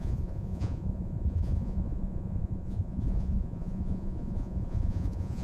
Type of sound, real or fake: fake